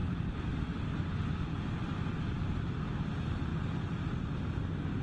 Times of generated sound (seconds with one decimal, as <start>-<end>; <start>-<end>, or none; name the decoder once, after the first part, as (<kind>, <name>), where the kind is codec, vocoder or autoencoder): 0.0-2.8 (vocoder, BigVGAN v2)